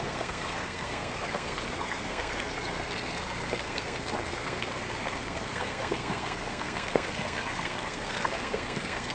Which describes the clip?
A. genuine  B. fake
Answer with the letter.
B